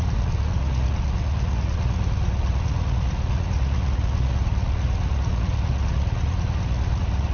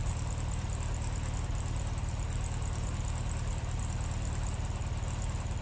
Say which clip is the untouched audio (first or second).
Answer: second